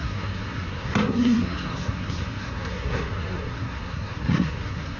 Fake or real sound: fake